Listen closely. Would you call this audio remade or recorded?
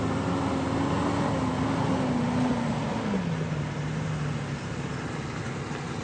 recorded